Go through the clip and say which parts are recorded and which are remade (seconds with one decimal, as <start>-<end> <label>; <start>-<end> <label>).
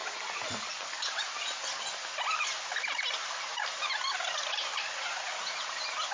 0.0-6.1 recorded